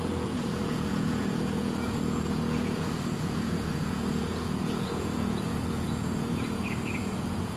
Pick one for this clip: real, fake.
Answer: fake